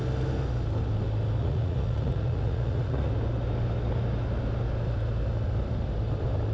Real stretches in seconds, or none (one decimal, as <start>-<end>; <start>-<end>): 0.0-1.4; 3.1-6.5